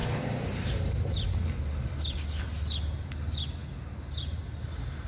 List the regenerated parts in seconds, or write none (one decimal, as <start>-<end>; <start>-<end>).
none